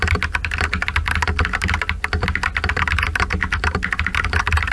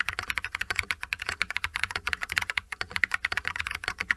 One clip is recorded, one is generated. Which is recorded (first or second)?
first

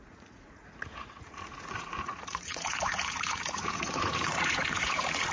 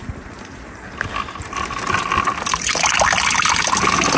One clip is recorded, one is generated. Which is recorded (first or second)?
second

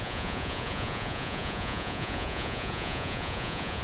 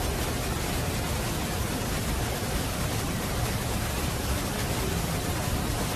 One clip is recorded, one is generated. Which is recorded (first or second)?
second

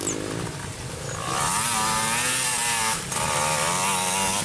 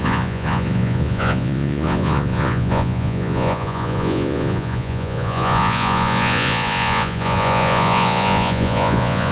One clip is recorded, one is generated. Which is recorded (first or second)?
first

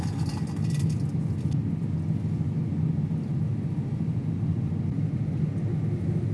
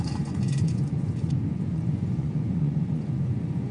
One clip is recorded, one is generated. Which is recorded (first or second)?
first